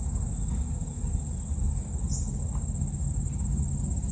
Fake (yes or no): no